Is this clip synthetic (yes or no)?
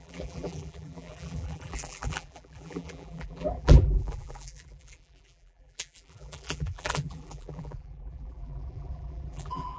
yes